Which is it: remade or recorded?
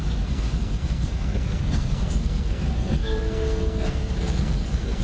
remade